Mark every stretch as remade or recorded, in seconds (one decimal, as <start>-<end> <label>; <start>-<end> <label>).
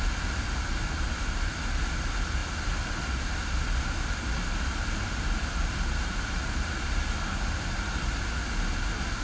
0.0-9.2 recorded